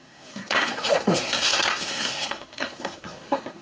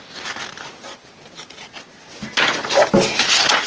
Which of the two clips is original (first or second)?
second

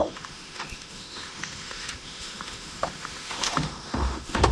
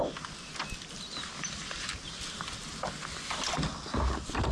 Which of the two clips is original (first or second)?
second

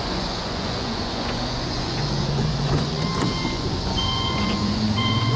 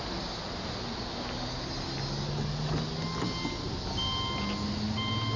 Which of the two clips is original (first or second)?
second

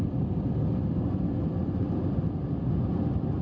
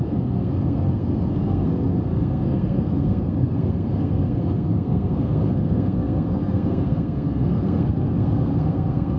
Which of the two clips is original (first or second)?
first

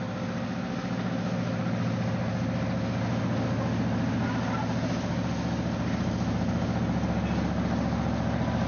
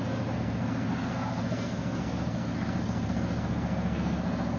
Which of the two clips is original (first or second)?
first